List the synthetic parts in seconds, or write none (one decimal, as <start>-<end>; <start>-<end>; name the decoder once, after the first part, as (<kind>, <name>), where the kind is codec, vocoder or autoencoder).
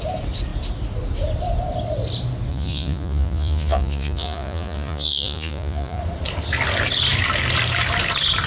2.5-6.0 (vocoder, Vocos)